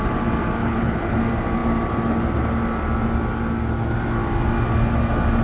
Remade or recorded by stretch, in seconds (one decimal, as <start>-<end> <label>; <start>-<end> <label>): 0.0-0.6 recorded; 0.6-1.2 remade; 1.2-5.4 recorded

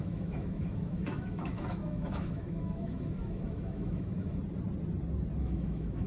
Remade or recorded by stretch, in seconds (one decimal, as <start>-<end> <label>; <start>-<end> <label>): 0.0-4.4 remade; 4.4-5.4 recorded; 5.4-6.1 remade

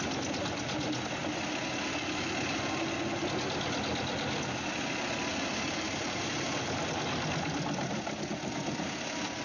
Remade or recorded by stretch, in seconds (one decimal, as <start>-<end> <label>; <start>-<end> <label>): 0.0-9.4 recorded

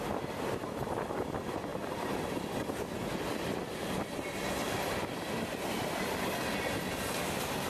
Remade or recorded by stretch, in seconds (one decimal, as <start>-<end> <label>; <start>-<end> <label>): 0.0-7.7 recorded

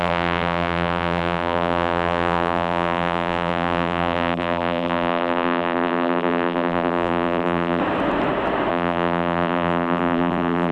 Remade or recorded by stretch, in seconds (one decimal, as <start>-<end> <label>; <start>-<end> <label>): 0.0-7.8 remade; 7.8-8.7 recorded; 8.7-10.7 remade